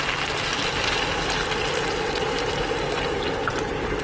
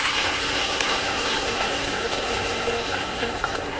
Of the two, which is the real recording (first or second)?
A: first